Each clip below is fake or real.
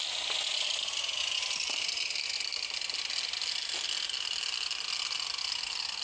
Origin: real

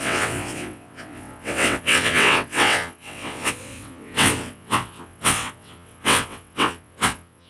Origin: fake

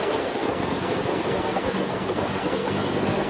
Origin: fake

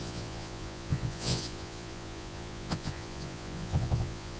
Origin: fake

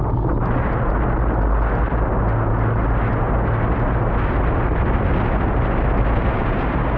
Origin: real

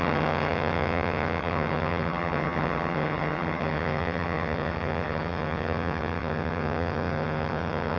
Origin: fake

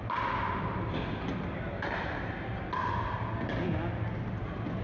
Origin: real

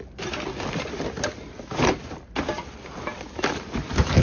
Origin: real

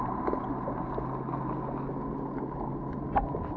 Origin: real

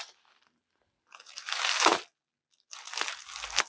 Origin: real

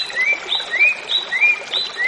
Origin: real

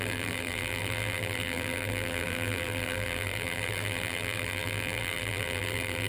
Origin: fake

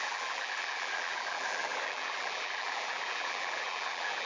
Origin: fake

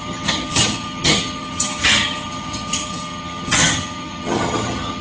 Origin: fake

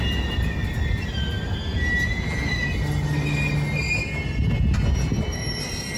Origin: real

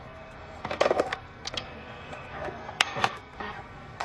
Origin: fake